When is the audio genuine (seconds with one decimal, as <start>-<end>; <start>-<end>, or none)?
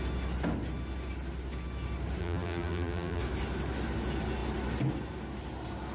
0.0-2.2; 3.2-5.9